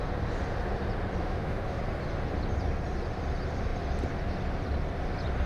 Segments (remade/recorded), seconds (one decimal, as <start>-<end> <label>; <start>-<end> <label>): 0.0-1.2 recorded; 1.2-1.8 remade; 1.8-5.5 recorded